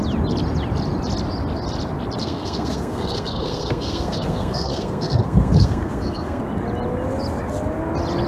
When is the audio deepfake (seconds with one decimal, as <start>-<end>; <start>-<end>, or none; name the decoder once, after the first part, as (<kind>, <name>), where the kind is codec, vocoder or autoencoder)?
2.2-6.4 (codec, SNAC)